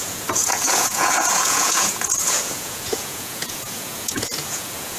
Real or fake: fake